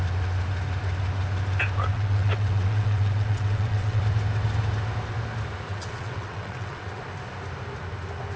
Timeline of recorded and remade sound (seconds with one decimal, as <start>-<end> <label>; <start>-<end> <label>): 0.0-1.9 recorded; 1.9-4.0 remade; 4.0-5.7 recorded; 5.7-7.0 remade; 7.0-8.4 recorded